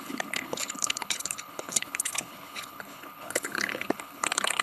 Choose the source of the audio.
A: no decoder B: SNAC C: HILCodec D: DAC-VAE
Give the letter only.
C